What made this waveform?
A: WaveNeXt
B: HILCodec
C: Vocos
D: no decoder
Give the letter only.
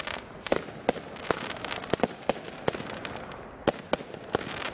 D